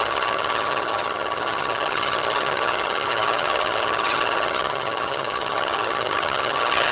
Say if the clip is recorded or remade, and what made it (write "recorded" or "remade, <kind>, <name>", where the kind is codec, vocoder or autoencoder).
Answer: remade, vocoder, HiFi-GAN